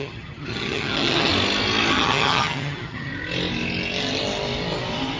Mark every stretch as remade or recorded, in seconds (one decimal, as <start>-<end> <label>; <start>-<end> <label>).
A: 0.0-1.3 remade; 1.3-1.9 recorded; 1.9-3.1 remade; 3.1-5.2 recorded